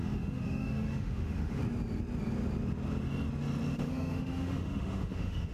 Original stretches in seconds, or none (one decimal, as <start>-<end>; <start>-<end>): 1.6-3.7